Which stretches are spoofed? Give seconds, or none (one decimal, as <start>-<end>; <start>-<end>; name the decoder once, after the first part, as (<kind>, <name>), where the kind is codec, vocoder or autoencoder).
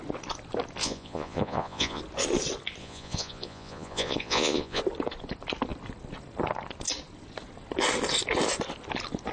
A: 0.8-2.0 (vocoder, Vocos); 2.8-4.8